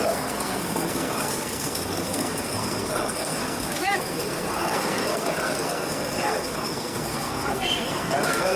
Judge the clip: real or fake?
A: fake